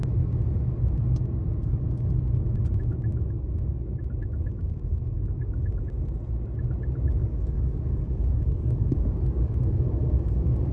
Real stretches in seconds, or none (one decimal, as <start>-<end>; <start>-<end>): 0.0-1.6; 2.2-3.1; 4.0-4.5; 5.8-7.2